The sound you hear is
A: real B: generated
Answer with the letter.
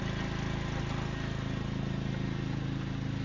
A